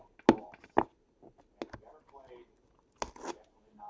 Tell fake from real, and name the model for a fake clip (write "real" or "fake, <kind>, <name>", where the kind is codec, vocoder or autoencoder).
real